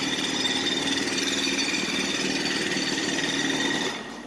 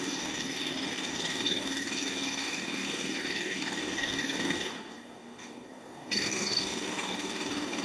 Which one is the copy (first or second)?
second